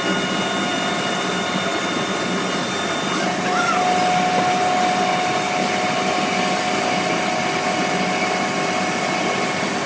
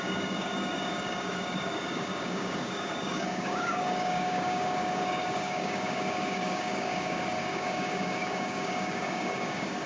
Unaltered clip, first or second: first